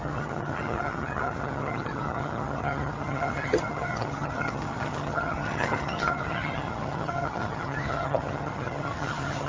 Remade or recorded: remade